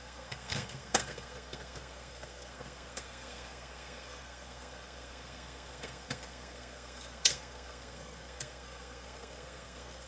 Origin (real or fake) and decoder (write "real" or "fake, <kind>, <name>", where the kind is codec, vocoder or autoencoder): fake, codec, SNAC